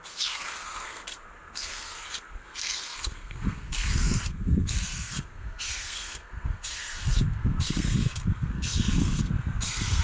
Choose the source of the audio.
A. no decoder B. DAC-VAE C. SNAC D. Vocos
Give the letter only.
C